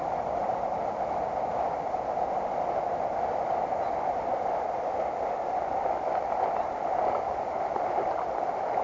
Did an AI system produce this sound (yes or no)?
no